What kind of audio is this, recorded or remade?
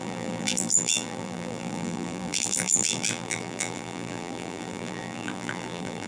remade